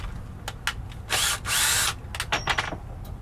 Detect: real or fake real